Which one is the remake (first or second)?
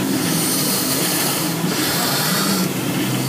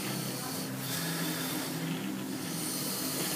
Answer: first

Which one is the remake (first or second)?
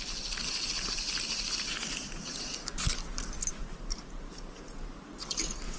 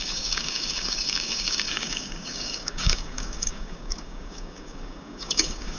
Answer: second